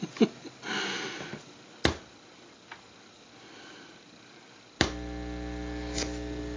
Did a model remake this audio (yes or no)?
no